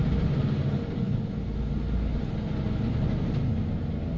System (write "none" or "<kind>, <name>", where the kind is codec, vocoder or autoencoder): none